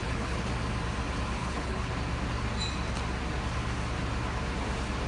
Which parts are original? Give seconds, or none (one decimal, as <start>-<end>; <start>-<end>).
0.5-1.4; 1.9-5.1